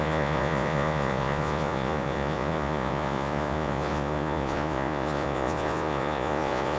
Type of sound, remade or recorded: remade